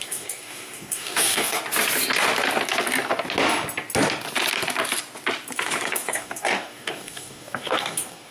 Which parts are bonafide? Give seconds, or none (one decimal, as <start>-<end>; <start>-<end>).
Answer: 1.6-5.9